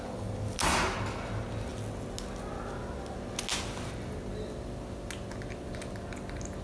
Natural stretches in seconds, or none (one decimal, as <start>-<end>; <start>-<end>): 0.0-6.6